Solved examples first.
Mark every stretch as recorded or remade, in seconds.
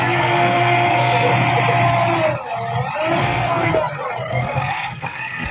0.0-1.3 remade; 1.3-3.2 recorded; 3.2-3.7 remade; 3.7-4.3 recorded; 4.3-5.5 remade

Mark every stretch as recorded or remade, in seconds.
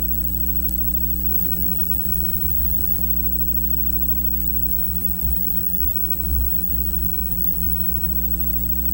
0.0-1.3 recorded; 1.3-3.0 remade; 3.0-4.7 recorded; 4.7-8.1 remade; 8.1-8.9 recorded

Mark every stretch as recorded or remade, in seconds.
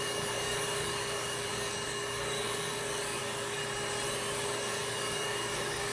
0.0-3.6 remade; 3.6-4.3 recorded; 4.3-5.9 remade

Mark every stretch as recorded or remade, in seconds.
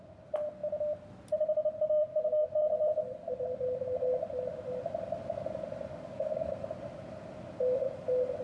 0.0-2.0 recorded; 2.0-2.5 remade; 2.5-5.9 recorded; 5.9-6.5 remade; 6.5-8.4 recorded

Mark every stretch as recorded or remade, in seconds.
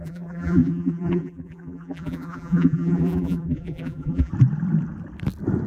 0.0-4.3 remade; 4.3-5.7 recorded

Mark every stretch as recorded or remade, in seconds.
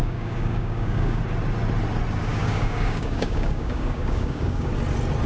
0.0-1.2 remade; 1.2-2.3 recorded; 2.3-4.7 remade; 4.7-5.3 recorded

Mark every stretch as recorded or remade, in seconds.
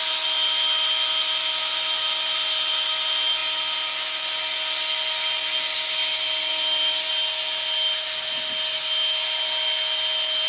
0.0-6.5 recorded; 6.5-7.1 remade; 7.1-10.5 recorded